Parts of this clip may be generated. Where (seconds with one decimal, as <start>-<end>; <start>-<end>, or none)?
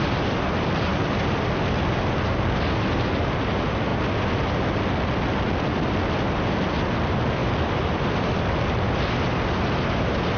0.9-1.6; 7.4-8.0